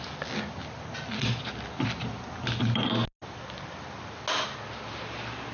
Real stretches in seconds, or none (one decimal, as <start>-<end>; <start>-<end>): 0.0-5.5